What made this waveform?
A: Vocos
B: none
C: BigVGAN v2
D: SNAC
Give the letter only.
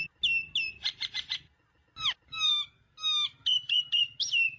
B